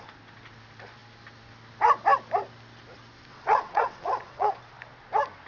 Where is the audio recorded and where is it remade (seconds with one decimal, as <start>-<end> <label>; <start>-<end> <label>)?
0.0-3.3 recorded; 3.3-4.6 remade; 4.6-5.5 recorded